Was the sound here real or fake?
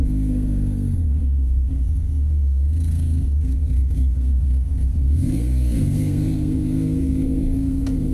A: fake